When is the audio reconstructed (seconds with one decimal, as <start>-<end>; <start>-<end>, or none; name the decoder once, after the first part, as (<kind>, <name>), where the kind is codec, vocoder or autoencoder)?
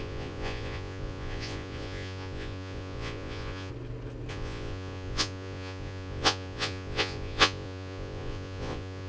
0.0-3.7 (vocoder, Vocos); 4.3-9.1